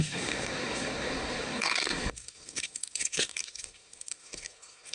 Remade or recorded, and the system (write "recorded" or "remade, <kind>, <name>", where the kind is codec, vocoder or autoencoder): remade, codec, SNAC